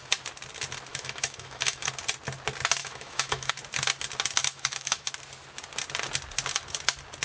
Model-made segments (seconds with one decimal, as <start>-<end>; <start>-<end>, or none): 0.9-1.9; 2.8-3.5; 4.4-5.1